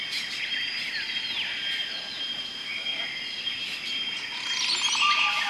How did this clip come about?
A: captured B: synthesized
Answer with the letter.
A